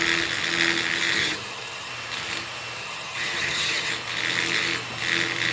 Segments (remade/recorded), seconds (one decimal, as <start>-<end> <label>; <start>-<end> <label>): 0.0-1.2 recorded; 1.2-1.9 remade; 1.9-2.8 recorded; 2.8-3.9 remade; 3.9-5.5 recorded